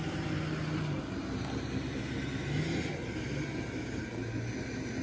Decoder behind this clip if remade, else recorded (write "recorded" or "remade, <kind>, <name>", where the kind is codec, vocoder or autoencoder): recorded